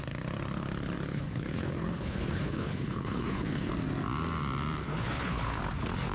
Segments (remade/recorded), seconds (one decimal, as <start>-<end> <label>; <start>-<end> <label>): 0.0-1.1 recorded; 1.1-3.7 remade; 3.7-4.8 recorded; 4.8-5.6 remade; 5.6-6.1 recorded